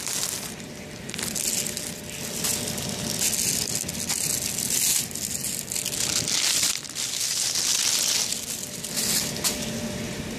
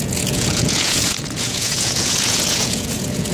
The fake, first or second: second